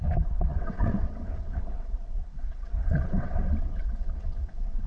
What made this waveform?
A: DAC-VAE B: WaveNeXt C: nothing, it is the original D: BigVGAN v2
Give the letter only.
B